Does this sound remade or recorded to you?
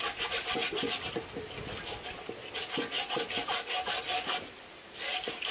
recorded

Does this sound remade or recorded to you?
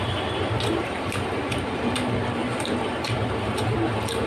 remade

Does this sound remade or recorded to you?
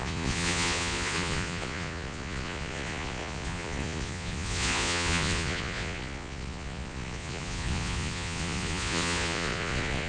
remade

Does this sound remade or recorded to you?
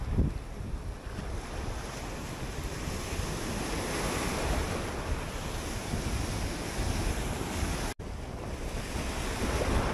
recorded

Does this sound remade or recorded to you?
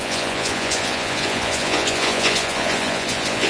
remade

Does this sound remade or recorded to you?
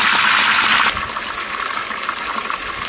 recorded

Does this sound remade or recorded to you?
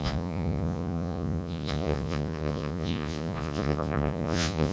remade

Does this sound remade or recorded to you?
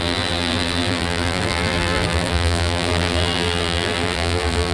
remade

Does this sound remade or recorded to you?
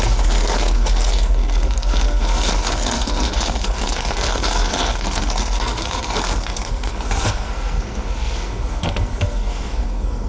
remade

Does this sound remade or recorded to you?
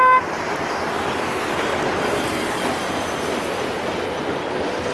recorded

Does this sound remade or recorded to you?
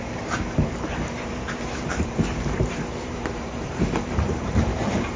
remade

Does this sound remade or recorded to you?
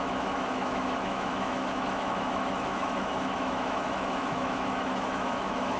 remade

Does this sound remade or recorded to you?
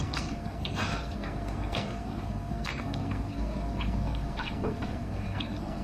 remade